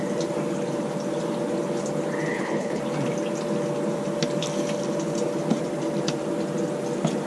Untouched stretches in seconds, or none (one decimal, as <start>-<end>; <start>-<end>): 0.0-2.3; 2.8-7.3